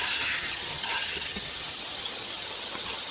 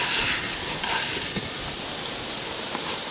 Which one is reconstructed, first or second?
first